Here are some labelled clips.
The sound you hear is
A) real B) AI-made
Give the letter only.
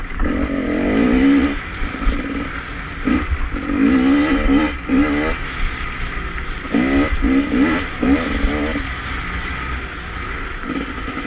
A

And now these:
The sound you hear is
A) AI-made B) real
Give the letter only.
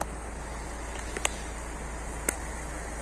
B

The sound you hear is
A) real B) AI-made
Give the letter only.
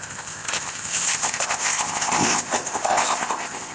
B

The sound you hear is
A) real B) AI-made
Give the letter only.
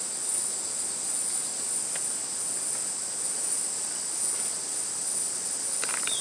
A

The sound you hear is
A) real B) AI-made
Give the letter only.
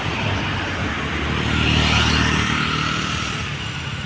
A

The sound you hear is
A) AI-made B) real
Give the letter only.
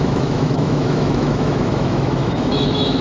A